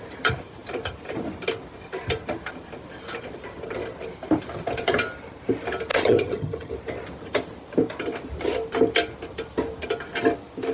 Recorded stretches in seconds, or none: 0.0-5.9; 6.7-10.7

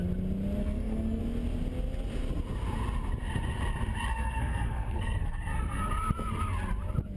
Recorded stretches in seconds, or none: 0.0-0.6; 1.2-4.1; 5.8-7.2

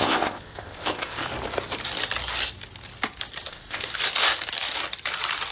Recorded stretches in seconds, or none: 1.2-3.5; 3.9-5.5

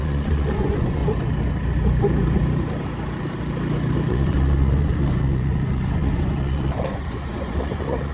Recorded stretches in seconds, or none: 1.0-4.1

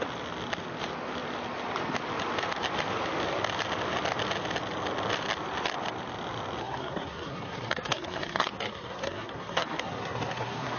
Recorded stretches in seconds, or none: 0.0-6.6

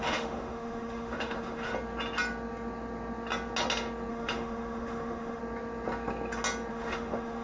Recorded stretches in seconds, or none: 1.7-4.1; 5.4-6.7